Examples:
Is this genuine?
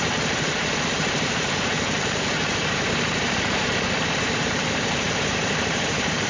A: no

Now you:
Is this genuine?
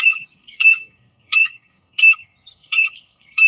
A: no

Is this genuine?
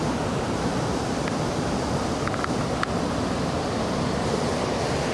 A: yes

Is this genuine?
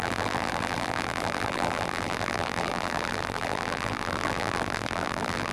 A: no